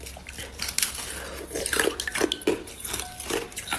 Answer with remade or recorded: recorded